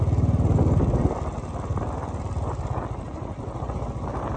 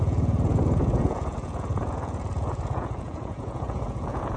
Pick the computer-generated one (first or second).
second